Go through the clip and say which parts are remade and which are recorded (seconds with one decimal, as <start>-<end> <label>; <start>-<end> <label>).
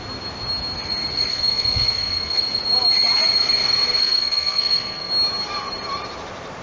0.0-1.3 recorded; 1.3-2.4 remade; 2.4-4.0 recorded; 4.0-5.1 remade; 5.1-6.6 recorded